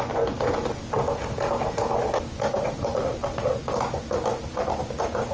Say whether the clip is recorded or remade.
recorded